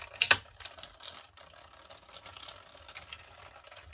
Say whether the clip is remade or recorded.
recorded